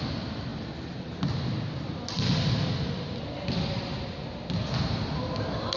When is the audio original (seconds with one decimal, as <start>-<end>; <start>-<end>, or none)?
0.0-5.8